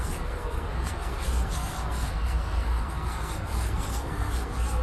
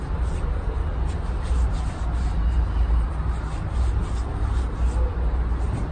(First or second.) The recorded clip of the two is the second